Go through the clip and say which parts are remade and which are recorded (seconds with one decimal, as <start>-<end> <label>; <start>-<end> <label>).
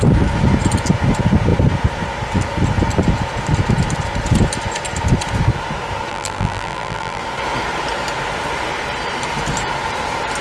0.0-6.1 recorded; 6.1-7.2 remade; 7.2-10.4 recorded